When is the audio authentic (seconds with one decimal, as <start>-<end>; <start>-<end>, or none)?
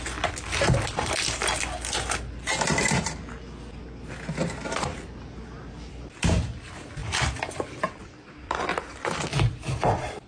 1.4-5.7; 9.3-9.8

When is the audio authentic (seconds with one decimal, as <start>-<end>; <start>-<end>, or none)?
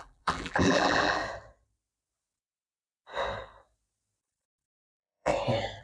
1.2-4.2; 5.3-5.8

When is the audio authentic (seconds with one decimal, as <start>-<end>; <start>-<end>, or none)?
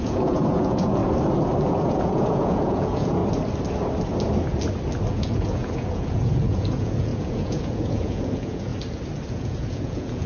1.0-1.7; 3.2-5.1; 8.7-9.3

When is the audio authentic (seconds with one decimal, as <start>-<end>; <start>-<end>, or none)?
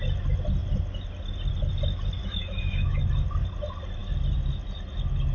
0.0-2.2; 3.0-5.3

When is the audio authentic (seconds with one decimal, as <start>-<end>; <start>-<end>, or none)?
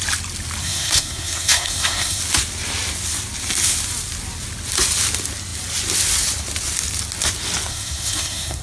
0.0-0.6; 2.2-7.7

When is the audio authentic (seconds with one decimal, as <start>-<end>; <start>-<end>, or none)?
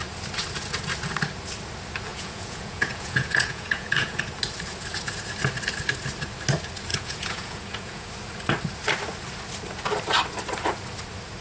0.0-2.1; 4.2-6.9; 8.1-11.4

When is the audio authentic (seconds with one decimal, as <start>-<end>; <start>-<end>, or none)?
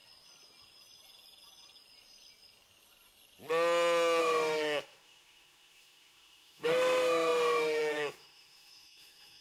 0.0-4.2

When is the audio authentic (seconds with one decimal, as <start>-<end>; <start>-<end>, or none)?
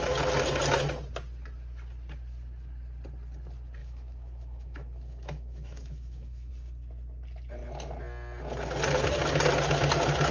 0.0-3.8; 6.5-10.3